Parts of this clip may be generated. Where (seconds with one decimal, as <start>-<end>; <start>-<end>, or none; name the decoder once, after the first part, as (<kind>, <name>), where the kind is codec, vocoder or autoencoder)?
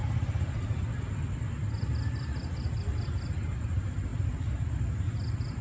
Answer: 3.4-4.1 (vocoder, BigVGAN v2)